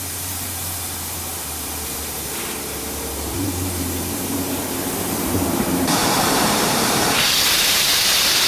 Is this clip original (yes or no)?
no